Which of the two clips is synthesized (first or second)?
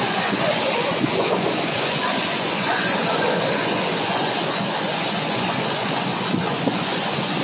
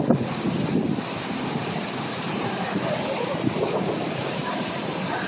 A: first